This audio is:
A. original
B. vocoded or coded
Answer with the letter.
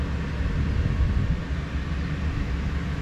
A